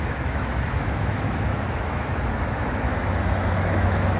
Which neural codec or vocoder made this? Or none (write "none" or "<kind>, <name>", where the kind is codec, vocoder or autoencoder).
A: autoencoder, DAC-VAE